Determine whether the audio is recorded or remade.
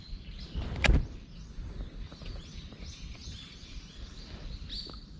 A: recorded